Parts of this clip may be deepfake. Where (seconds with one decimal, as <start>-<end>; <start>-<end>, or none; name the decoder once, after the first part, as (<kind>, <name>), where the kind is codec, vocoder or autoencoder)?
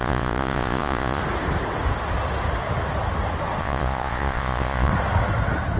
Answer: 0.0-1.2 (vocoder, Vocos); 3.6-4.9